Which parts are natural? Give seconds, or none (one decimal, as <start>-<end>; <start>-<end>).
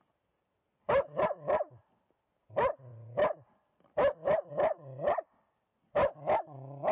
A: 2.9-4.5; 5.7-6.4